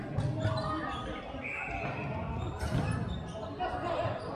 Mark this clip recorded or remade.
recorded